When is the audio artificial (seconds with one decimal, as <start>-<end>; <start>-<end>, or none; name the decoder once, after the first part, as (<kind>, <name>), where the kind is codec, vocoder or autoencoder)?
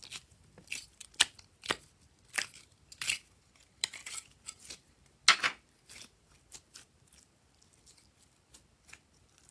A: none